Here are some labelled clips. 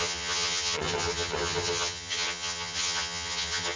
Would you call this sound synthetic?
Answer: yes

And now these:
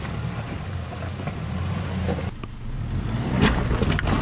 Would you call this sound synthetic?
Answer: no